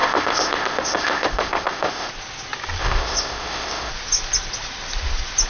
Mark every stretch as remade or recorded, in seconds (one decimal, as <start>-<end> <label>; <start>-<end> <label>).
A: 0.0-2.1 remade; 2.1-2.8 recorded; 2.8-3.9 remade; 3.9-5.5 recorded